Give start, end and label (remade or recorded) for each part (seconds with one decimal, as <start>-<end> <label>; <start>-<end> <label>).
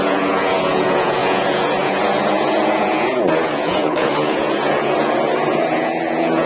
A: 0.0-6.5 remade